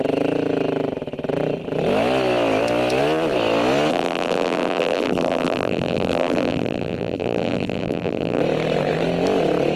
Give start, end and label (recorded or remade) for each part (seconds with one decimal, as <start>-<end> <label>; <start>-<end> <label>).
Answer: 0.0-3.9 recorded; 3.9-8.4 remade; 8.4-9.8 recorded